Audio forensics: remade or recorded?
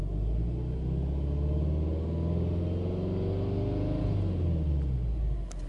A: recorded